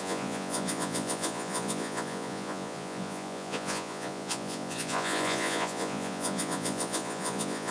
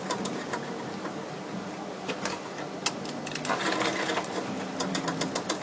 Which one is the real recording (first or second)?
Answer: second